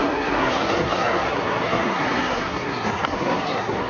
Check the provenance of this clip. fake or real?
fake